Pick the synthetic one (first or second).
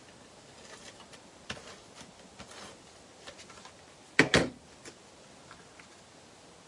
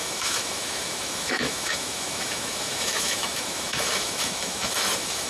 second